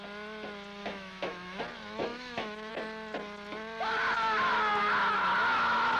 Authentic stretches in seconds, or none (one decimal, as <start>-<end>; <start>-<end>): 0.0-0.8; 1.6-2.1; 2.7-6.0